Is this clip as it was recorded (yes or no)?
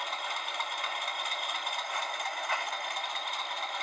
no